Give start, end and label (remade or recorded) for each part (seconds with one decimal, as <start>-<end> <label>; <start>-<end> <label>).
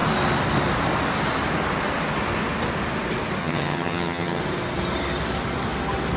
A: 0.0-3.4 recorded; 3.4-4.4 remade; 4.4-6.2 recorded